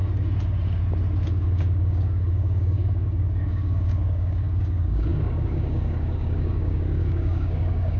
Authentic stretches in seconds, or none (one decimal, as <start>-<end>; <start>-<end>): 0.0-1.3